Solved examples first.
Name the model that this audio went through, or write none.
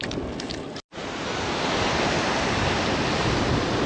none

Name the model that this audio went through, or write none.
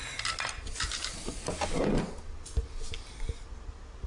none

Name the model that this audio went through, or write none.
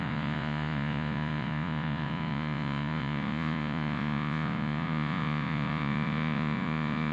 vocoder, Vocos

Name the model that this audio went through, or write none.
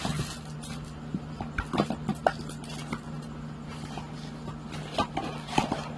none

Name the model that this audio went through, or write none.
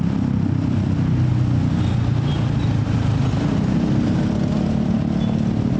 none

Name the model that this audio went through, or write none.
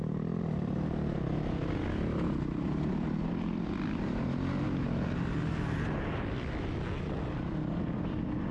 none